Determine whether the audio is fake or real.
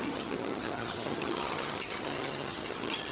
fake